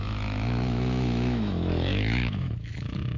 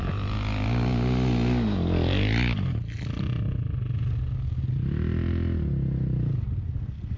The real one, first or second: second